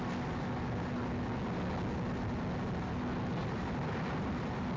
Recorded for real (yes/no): yes